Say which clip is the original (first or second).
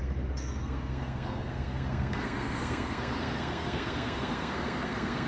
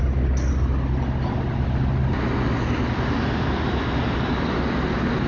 second